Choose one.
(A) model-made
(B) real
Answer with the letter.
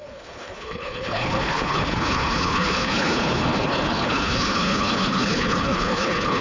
A